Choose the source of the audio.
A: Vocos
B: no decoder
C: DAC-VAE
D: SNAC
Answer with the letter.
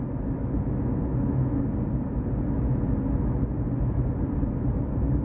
B